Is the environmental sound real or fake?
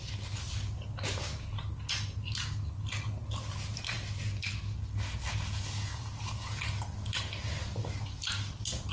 real